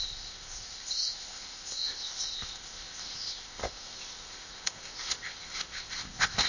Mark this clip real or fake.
fake